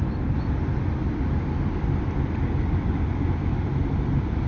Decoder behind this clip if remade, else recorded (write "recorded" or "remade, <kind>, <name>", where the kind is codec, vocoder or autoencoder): recorded